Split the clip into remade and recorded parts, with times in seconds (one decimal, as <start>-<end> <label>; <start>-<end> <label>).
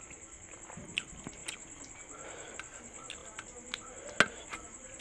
0.0-5.0 recorded